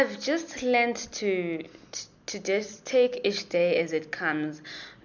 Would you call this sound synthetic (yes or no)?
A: no